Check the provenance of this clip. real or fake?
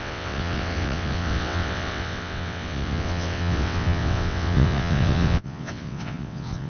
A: fake